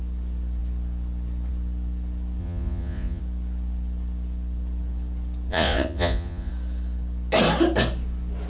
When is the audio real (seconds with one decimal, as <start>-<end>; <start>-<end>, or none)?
0.0-2.4; 3.2-5.5; 6.5-8.5